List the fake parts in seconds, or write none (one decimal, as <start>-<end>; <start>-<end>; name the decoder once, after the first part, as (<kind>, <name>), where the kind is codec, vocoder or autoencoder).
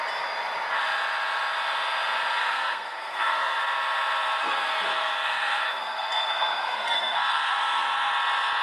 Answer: 2.4-3.6 (codec, SNAC); 4.4-8.1